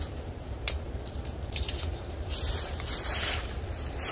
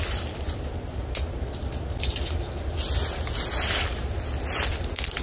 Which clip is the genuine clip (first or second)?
second